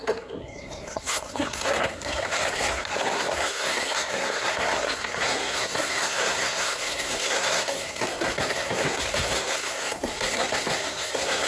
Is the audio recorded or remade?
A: remade